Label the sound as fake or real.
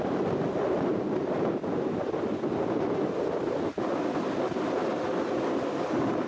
real